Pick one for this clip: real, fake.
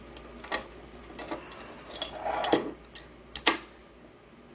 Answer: real